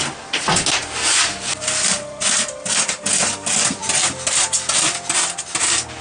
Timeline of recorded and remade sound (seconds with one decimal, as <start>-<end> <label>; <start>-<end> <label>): 0.0-3.8 remade; 3.8-5.6 recorded; 5.6-6.0 remade